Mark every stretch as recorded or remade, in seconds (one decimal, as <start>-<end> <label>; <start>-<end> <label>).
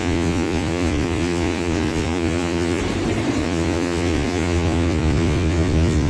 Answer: 0.0-2.8 remade; 2.8-3.4 recorded; 3.4-6.1 remade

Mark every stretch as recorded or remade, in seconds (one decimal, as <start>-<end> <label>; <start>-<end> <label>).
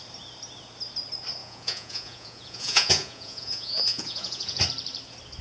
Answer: 0.0-1.4 recorded; 1.4-4.6 remade; 4.6-5.4 recorded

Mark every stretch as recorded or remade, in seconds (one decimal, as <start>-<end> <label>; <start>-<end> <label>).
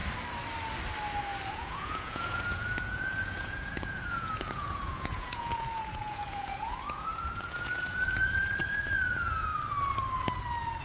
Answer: 0.0-1.5 recorded; 1.5-9.5 remade; 9.5-10.8 recorded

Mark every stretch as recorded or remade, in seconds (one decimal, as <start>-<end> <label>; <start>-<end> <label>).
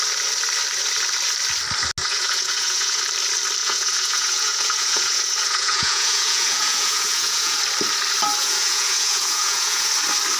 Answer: 0.0-2.0 recorded; 2.0-3.0 remade; 3.0-3.6 recorded; 3.6-7.6 remade; 7.6-8.4 recorded; 8.4-9.9 remade; 9.9-10.4 recorded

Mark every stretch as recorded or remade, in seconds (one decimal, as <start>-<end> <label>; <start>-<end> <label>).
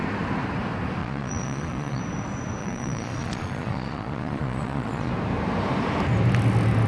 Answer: 0.0-1.0 recorded; 1.0-2.0 remade; 2.0-2.6 recorded; 2.6-5.1 remade; 5.1-6.9 recorded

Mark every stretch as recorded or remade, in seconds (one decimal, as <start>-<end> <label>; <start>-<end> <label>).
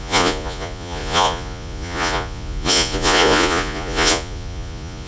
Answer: 0.0-5.1 remade